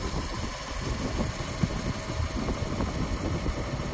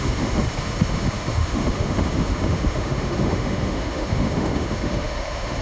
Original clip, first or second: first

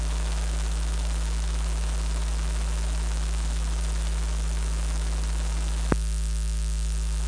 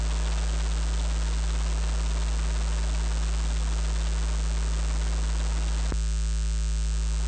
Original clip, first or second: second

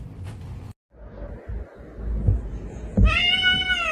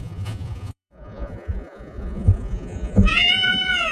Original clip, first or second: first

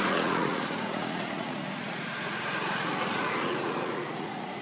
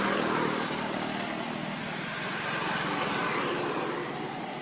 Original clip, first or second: second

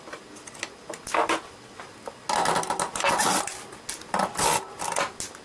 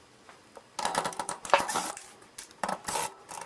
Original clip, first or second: first